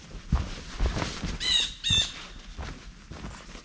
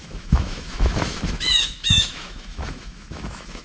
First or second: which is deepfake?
second